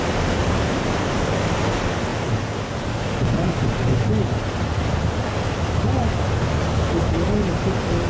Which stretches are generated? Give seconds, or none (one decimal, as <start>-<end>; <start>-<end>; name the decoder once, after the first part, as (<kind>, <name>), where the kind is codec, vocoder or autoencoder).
0.4-1.2 (vocoder, BigVGAN v2)